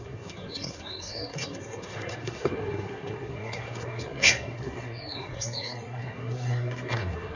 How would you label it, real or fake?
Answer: fake